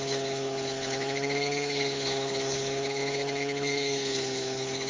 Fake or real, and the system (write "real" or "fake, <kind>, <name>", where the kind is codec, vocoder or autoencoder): fake, codec, HILCodec